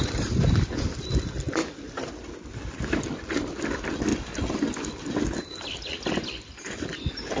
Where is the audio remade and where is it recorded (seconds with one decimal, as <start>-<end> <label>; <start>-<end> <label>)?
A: 0.0-1.6 remade; 1.6-2.8 recorded; 2.8-4.1 remade; 4.1-7.4 recorded